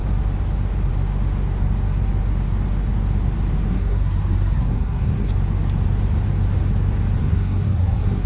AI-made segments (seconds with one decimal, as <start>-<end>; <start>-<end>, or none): 3.7-5.3; 7.2-8.3